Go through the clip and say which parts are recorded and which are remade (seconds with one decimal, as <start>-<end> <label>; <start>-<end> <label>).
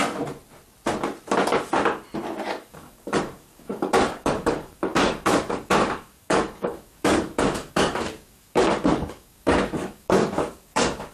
0.0-2.6 recorded; 2.6-11.1 remade